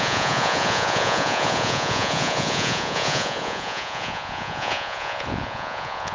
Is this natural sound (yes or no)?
no